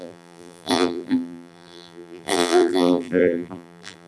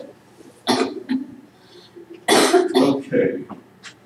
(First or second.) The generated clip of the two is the first